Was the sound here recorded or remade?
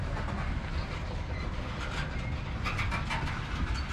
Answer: recorded